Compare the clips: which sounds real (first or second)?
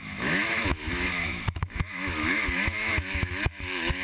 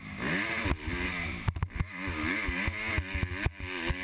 second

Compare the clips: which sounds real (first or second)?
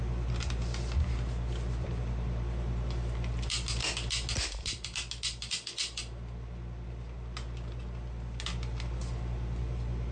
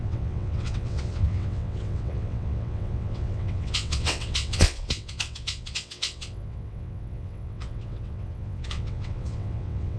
first